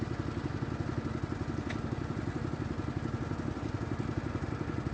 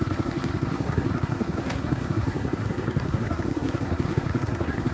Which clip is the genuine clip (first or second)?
first